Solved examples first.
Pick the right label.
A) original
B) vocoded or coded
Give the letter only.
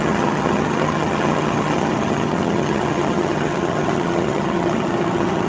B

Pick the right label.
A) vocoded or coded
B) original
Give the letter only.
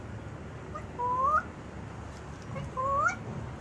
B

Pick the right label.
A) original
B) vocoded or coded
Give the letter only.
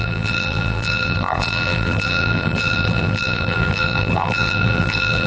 B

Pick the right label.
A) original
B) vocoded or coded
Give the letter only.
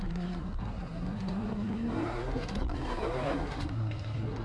B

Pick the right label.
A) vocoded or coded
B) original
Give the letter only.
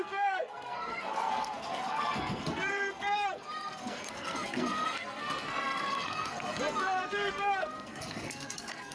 A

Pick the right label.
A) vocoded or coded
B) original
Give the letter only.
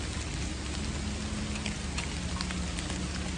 B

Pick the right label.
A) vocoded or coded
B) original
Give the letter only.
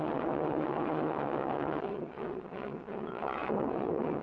A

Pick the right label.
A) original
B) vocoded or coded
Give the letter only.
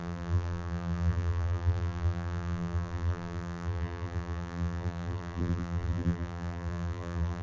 B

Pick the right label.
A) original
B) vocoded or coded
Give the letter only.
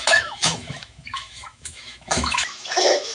B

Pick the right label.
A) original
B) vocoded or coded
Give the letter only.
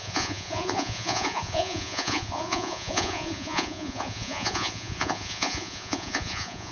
B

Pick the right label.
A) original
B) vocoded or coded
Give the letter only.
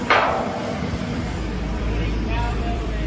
B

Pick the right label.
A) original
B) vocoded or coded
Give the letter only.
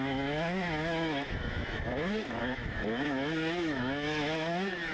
B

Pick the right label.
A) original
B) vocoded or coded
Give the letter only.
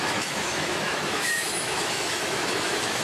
B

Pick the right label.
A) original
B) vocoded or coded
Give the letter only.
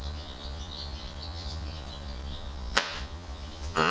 B